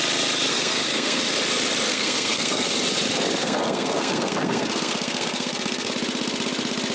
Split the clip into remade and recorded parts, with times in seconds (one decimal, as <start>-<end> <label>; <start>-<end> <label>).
0.0-0.5 recorded; 0.5-1.2 remade; 1.2-1.9 recorded; 1.9-2.7 remade; 2.7-3.4 recorded; 3.4-5.9 remade; 5.9-6.9 recorded